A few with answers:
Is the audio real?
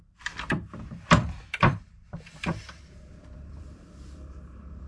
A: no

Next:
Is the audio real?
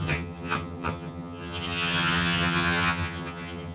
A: no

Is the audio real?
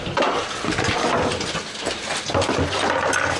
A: yes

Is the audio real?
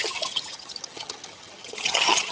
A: no